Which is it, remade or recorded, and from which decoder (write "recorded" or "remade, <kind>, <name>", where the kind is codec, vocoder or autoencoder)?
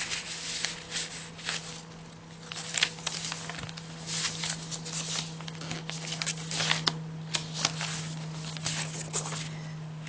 recorded